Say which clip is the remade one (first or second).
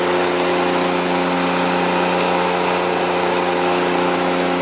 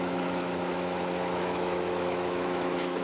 second